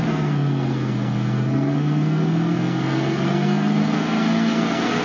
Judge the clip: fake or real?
fake